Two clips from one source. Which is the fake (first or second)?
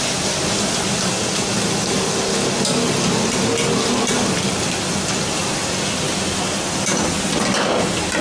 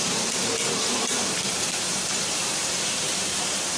second